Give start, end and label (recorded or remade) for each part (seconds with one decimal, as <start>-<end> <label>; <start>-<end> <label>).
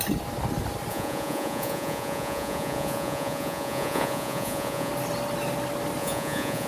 0.0-0.9 recorded; 0.9-4.9 remade; 4.9-6.0 recorded; 6.0-6.7 remade